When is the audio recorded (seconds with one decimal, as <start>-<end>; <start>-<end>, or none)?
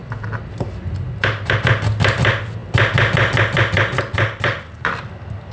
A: 1.2-2.6; 4.9-5.5